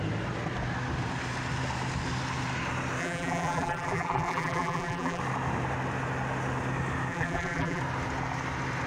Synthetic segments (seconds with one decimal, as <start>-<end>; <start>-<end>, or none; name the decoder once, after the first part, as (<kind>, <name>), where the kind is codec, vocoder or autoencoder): 3.0-5.2 (vocoder, BigVGAN v2); 7.1-7.8